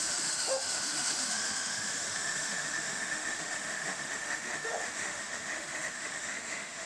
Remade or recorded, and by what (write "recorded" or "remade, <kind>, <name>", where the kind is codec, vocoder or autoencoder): remade, autoencoder, DAC-VAE